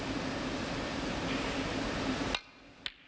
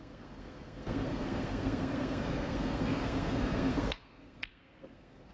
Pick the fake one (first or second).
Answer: second